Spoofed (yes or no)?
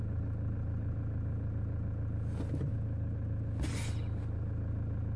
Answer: no